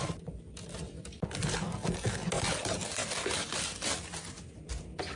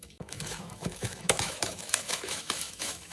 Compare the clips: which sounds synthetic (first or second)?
second